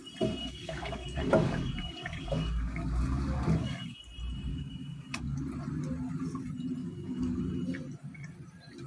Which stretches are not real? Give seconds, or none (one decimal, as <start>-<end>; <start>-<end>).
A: 0.4-4.0; 4.5-5.4; 6.8-7.4